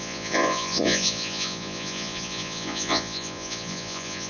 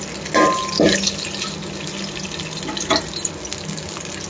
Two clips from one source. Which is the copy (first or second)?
first